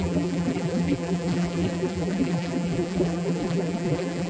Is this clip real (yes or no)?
no